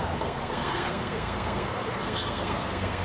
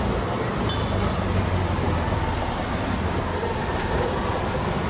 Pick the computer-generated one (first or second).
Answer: first